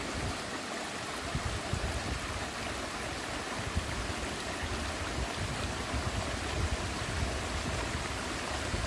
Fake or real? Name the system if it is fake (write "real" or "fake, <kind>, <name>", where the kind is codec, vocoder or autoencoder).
real